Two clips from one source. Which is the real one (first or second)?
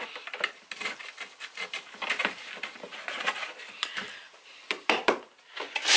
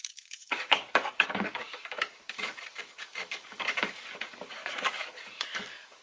first